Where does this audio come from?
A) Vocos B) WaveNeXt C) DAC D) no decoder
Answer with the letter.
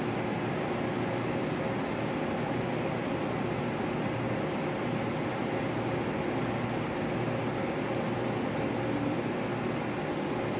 D